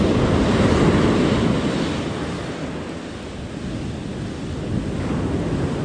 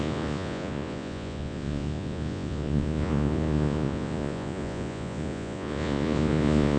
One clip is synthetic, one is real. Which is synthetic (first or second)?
second